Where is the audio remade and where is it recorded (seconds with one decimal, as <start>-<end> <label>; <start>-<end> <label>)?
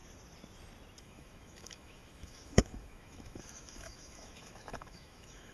0.0-1.0 recorded; 1.0-5.5 remade